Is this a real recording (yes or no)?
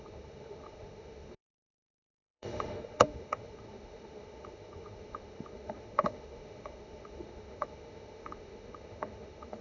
no